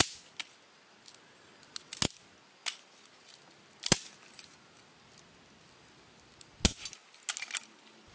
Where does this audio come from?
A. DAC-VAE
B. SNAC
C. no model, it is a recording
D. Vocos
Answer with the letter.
C